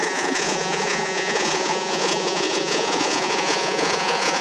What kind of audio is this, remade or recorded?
remade